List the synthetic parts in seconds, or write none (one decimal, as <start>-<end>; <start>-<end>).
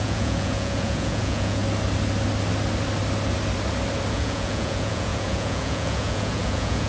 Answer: 0.0-1.6; 4.1-6.9